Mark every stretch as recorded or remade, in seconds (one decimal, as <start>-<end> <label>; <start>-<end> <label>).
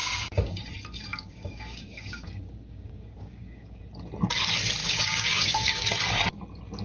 0.0-0.7 remade; 0.7-1.1 recorded; 1.1-3.8 remade; 3.8-4.8 recorded; 4.8-5.9 remade; 5.9-6.8 recorded